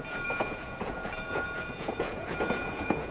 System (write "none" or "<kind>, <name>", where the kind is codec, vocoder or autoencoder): vocoder, Vocos